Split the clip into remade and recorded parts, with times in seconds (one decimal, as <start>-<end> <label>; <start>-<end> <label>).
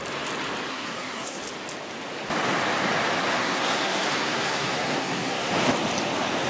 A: 0.0-0.7 recorded; 0.7-1.4 remade; 1.4-3.3 recorded; 3.3-5.5 remade; 5.5-6.5 recorded